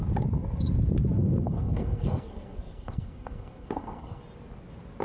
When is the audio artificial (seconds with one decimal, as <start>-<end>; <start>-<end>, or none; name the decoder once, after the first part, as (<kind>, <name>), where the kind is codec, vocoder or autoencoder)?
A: 1.2-4.2 (codec, SNAC)